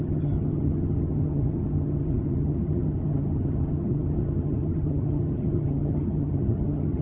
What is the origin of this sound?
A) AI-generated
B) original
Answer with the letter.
A